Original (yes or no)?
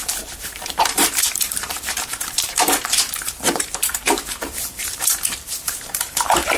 no